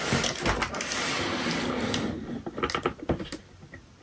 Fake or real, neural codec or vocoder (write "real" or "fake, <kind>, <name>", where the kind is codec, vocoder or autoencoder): real